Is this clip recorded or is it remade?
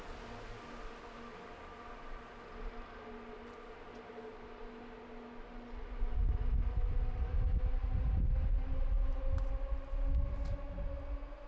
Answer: recorded